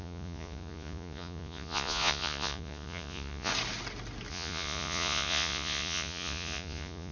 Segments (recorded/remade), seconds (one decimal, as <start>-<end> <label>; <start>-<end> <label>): 0.0-3.5 remade; 3.5-4.3 recorded; 4.3-7.1 remade